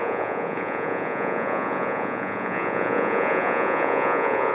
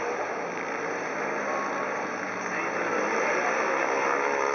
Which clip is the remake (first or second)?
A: first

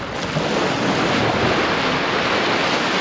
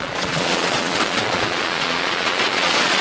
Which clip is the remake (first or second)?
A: second